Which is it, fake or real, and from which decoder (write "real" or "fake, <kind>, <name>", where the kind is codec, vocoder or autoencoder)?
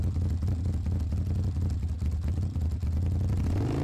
real